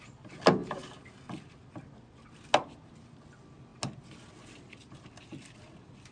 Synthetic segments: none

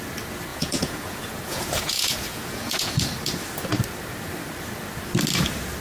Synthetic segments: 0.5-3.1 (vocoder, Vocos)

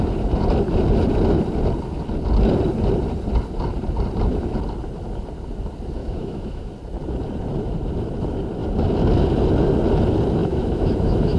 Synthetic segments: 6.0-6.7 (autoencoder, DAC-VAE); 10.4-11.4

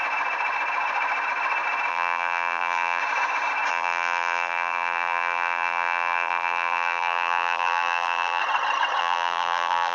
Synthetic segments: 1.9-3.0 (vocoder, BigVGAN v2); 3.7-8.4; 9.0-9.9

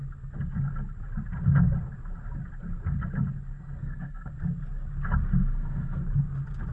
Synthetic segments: 3.8-4.3 (codec, SNAC); 5.4-6.0